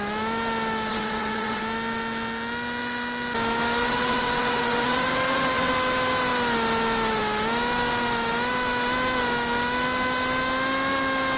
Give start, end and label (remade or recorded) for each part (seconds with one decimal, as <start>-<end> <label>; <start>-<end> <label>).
0.0-0.9 recorded; 0.9-1.6 remade; 1.6-3.8 recorded; 3.8-5.7 remade; 5.7-11.4 recorded